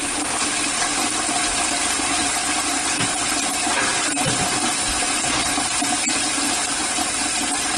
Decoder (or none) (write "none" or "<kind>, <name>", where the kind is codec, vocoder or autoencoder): none